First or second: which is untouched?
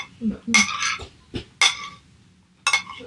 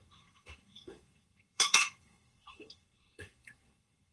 first